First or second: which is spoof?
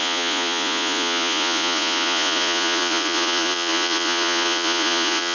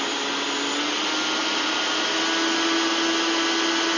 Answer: first